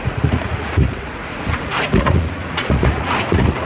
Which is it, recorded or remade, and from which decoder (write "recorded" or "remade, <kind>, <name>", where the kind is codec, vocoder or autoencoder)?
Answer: remade, vocoder, Vocos